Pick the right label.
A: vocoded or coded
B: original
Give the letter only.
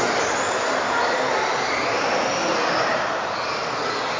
B